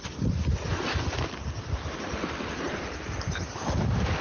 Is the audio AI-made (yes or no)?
no